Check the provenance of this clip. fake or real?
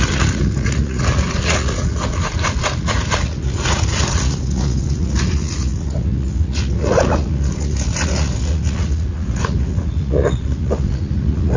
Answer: fake